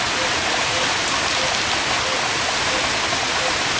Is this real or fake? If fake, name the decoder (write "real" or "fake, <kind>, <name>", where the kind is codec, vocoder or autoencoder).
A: real